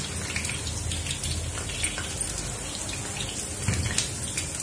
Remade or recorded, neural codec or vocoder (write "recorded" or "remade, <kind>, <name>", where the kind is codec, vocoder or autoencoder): recorded